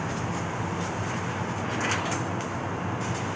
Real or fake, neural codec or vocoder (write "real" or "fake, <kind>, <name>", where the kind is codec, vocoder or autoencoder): real